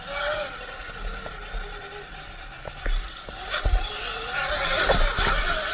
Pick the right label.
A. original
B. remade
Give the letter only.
A